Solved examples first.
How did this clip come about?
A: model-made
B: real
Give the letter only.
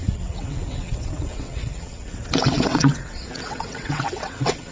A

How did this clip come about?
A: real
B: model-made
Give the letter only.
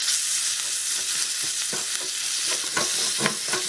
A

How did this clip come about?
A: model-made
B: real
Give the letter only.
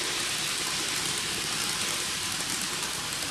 B